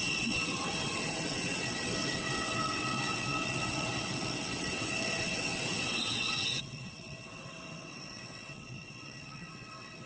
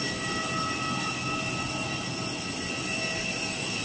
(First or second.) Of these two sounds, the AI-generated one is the first